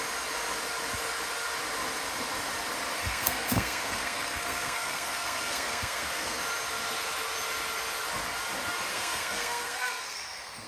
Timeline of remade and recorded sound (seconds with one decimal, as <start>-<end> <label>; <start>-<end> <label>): 0.0-3.1 recorded; 3.1-6.4 remade; 6.4-8.9 recorded; 8.9-10.7 remade